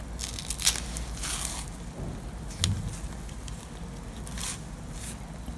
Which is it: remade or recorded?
recorded